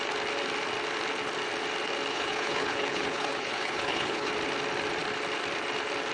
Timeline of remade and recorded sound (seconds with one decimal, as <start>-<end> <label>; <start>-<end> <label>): 0.0-2.1 recorded; 2.1-4.3 remade; 4.3-6.1 recorded